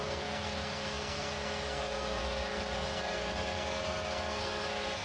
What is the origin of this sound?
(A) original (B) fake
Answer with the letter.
B